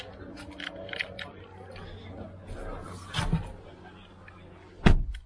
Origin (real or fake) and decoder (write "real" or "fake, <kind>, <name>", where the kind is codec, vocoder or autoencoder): real